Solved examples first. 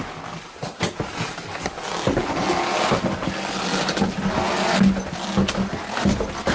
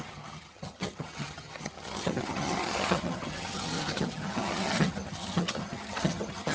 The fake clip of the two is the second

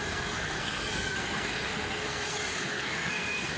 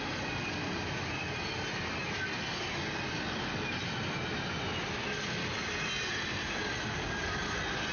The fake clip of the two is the first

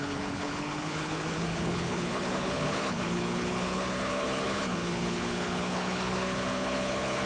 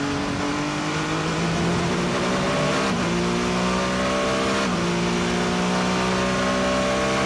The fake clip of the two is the first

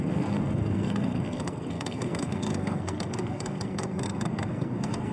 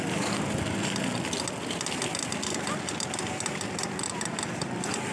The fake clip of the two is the first